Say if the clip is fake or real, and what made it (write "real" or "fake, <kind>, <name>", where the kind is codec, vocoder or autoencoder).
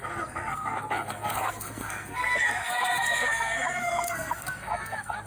fake, codec, SNAC